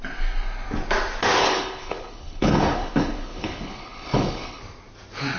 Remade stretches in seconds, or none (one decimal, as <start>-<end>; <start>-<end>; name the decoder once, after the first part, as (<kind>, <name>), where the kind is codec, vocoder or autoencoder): 1.4-4.6 (codec, HILCodec)